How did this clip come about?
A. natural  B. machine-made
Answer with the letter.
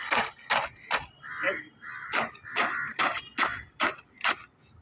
A